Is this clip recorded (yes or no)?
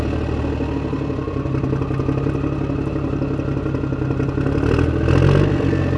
yes